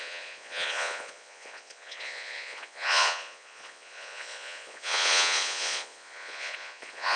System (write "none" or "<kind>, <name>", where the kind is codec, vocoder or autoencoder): vocoder, Vocos